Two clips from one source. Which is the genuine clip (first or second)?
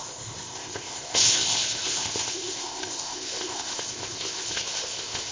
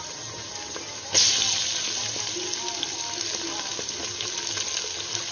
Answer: second